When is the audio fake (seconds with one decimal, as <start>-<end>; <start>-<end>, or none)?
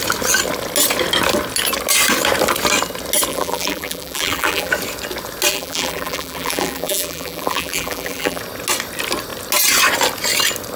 3.3-4.7; 5.5-8.4